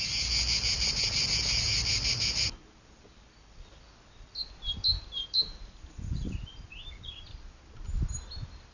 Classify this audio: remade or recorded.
recorded